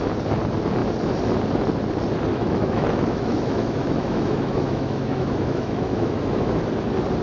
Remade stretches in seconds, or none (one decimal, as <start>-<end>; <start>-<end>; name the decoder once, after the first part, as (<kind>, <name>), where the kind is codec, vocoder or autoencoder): 2.3-6.6 (autoencoder, DAC-VAE)